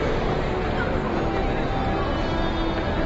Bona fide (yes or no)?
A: yes